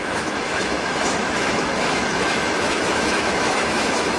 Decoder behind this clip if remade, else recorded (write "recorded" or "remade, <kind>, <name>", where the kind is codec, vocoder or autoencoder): remade, autoencoder, DAC-VAE